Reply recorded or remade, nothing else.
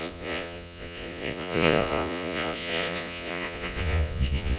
remade